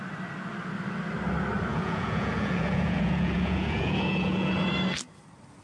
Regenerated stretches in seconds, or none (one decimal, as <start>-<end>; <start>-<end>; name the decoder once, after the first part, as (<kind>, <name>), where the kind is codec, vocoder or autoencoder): 1.7-4.7 (vocoder, Vocos)